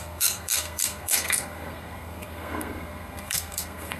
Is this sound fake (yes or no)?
yes